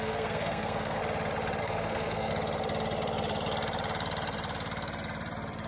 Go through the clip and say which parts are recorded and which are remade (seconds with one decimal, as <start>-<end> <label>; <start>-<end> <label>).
0.0-1.0 remade; 1.0-1.6 recorded; 1.6-2.3 remade; 2.3-5.7 recorded